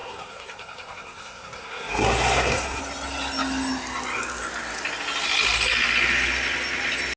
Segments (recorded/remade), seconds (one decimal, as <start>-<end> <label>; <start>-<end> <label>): 0.0-2.8 remade; 2.8-7.2 recorded